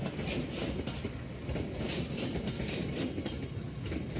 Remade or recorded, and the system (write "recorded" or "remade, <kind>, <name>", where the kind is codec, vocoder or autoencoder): recorded